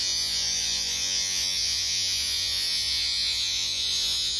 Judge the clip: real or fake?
fake